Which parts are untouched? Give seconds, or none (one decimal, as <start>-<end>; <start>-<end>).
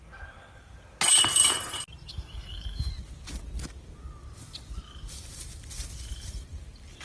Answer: 0.0-2.1; 2.9-7.0